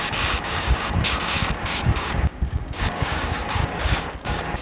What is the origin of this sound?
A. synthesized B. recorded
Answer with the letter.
A